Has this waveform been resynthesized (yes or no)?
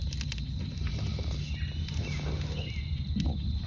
no